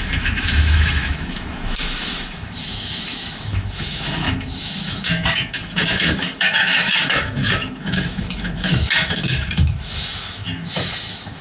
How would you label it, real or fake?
fake